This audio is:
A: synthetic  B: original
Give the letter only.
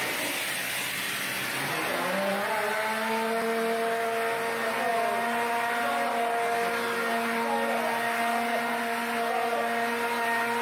B